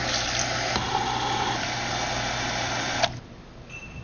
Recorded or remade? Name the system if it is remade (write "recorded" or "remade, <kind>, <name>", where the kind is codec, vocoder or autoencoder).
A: recorded